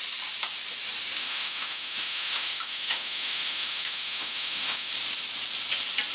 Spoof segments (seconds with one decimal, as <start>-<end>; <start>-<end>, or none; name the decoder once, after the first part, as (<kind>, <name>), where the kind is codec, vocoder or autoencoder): 1.2-4.9 (autoencoder, DAC-VAE)